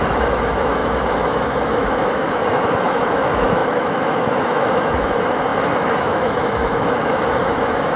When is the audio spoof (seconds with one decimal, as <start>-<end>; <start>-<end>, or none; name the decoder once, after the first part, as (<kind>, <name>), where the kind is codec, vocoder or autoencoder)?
0.0-8.0 (autoencoder, DAC-VAE)